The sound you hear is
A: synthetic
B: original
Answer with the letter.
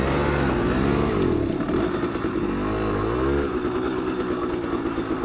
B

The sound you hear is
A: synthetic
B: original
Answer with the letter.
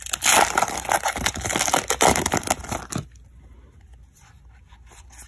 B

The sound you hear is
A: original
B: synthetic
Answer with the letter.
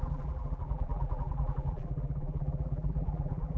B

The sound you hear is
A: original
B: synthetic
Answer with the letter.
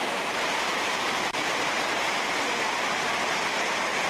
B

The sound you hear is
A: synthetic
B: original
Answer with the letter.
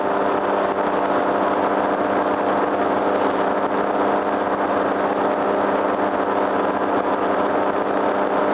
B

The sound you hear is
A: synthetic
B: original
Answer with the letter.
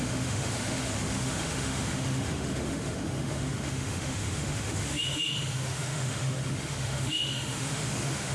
A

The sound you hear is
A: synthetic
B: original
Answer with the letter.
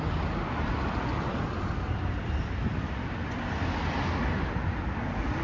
B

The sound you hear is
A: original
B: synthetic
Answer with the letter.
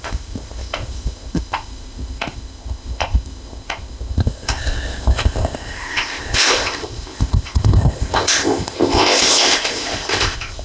B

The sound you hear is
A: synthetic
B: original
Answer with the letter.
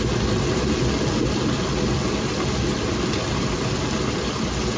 B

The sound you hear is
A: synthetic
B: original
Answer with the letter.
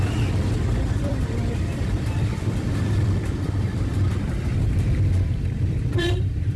A